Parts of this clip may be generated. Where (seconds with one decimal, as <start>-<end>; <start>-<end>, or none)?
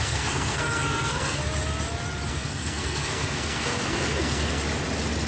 0.0-1.4; 2.3-4.6